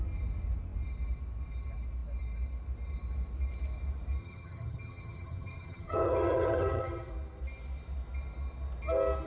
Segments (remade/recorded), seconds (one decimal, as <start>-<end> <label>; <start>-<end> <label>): 0.0-4.2 recorded; 4.2-7.1 remade; 7.1-9.3 recorded